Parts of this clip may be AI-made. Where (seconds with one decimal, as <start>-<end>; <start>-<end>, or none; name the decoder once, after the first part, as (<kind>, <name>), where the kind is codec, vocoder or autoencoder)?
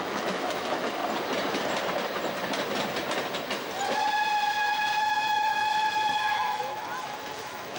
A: 0.0-1.0 (autoencoder, DAC-VAE); 5.0-7.8